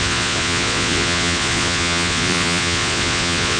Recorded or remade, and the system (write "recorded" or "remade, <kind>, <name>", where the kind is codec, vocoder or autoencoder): remade, vocoder, Vocos